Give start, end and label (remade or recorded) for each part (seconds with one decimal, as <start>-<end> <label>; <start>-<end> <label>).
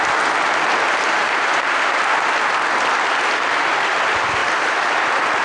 0.0-1.2 recorded; 1.2-2.0 remade; 2.0-5.4 recorded